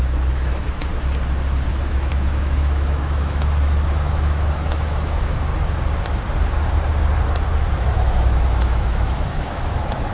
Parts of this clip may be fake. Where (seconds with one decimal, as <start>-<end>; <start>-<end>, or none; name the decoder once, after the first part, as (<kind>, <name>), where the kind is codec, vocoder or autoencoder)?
0.0-0.9 (autoencoder, DAC-VAE); 1.7-5.5; 7.8-10.1